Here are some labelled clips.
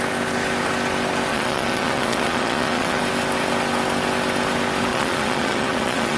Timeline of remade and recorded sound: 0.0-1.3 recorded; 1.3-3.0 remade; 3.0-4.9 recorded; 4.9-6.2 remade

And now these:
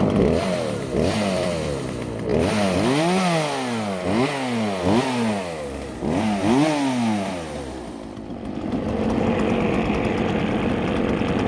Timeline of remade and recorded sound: 0.0-11.5 recorded

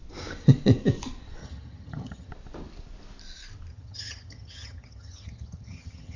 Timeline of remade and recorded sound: 0.0-1.4 recorded; 1.4-2.3 remade; 2.3-3.7 recorded; 3.7-6.2 remade

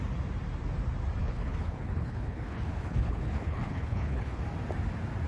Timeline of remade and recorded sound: 0.0-1.2 recorded; 1.2-4.4 remade; 4.4-5.3 recorded

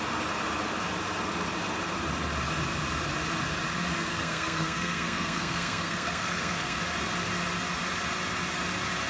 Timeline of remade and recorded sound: 0.0-4.1 recorded; 4.1-6.8 remade; 6.8-9.1 recorded